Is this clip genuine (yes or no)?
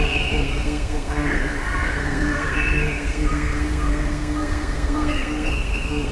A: no